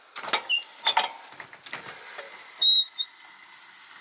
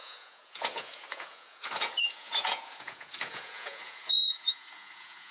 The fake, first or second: second